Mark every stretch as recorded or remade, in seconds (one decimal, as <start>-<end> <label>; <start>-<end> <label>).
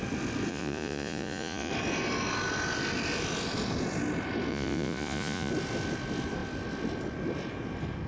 0.0-0.5 recorded; 0.5-1.7 remade; 1.7-4.5 recorded; 4.5-5.5 remade; 5.5-8.1 recorded